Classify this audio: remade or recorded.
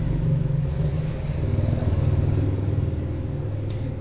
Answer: remade